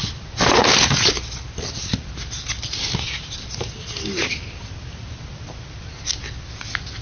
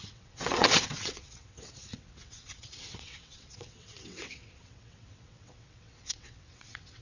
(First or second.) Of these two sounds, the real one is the first